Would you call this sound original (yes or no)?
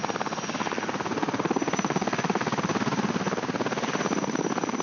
yes